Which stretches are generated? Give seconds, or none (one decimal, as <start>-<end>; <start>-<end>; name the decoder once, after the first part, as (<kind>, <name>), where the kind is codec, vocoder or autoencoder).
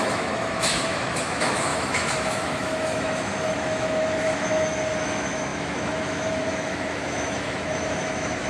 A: 0.0-8.5 (autoencoder, DAC-VAE)